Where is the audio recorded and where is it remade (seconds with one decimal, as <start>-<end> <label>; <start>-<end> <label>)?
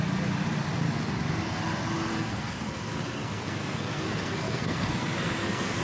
0.0-2.1 recorded; 2.1-5.8 remade